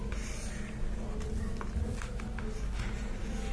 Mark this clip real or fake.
real